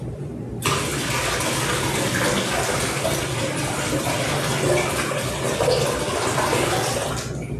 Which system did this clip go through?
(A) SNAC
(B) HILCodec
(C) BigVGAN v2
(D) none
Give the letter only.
D